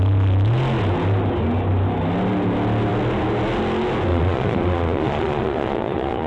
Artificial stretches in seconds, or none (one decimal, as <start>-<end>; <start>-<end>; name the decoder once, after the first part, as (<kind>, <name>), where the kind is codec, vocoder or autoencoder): 4.1-6.3 (vocoder, Vocos)